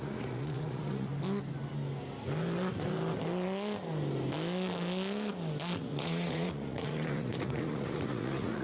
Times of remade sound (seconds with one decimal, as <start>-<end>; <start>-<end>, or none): 0.0-1.1; 5.8-8.6